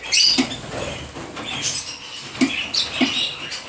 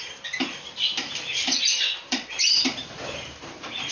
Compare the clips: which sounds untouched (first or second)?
first